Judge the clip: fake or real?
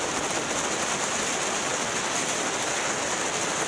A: real